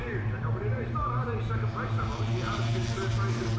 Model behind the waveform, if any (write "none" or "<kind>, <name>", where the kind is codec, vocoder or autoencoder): vocoder, BigVGAN v2